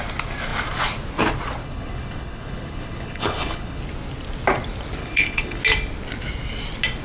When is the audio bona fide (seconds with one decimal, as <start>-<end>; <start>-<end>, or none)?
0.0-1.6; 3.8-5.0; 5.6-7.0